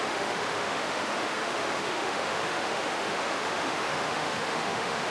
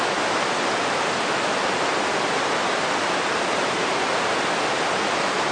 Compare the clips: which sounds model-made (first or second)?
first